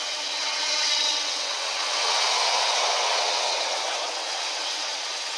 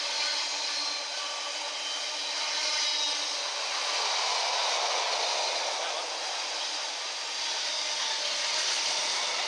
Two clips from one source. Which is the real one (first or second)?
second